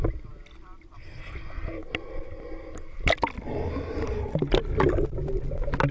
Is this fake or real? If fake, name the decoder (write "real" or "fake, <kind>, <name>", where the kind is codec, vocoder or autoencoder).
real